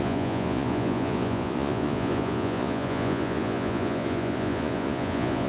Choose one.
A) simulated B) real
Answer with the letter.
A